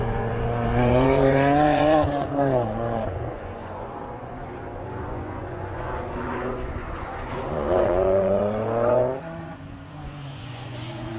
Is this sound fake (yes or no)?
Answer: yes